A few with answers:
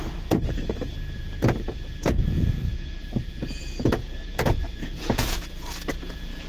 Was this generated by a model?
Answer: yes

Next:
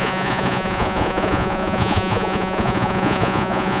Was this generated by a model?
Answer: yes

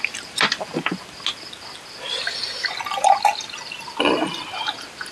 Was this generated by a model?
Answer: no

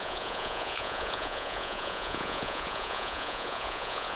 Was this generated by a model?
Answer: yes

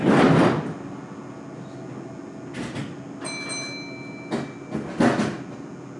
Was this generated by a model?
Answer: no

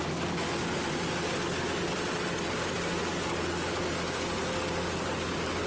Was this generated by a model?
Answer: no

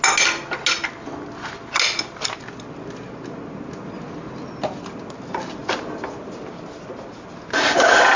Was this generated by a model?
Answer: no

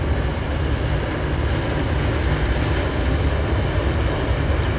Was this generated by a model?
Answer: no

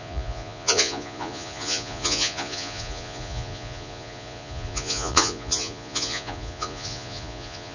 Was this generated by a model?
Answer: yes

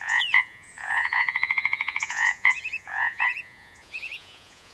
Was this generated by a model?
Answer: yes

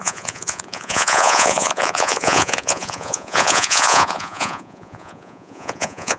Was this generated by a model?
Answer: yes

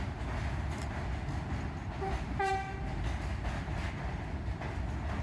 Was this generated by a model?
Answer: no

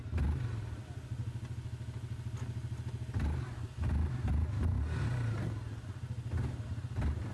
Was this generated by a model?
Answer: no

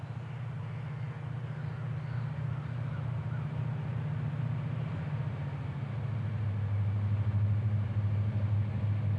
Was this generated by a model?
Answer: no